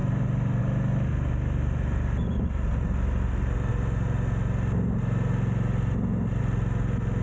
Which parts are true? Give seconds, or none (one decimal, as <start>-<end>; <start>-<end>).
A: 0.0-7.2